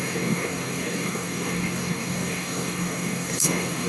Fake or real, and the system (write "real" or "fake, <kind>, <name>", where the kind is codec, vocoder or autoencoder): fake, codec, DAC